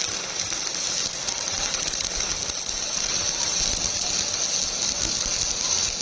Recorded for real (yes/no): yes